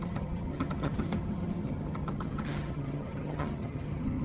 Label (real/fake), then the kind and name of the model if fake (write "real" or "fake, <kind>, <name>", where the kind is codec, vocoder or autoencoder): fake, vocoder, HiFi-GAN